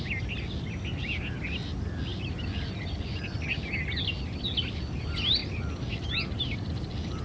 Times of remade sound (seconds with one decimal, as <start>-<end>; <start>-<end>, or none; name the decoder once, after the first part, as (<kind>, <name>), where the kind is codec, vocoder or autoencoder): none